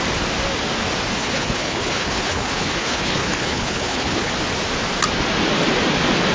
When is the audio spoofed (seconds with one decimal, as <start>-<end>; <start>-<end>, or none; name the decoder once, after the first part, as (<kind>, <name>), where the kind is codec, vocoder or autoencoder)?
1.2-4.3 (codec, HILCodec)